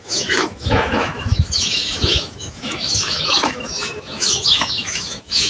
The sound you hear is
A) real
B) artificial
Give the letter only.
B